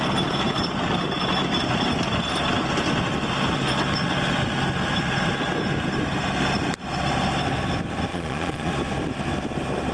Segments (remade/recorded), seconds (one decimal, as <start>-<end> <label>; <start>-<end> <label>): 0.0-8.1 recorded; 8.1-8.7 remade; 8.7-9.9 recorded